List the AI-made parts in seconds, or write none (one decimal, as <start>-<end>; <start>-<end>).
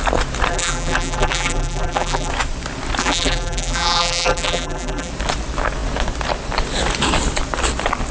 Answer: 0.5-2.3; 3.0-5.1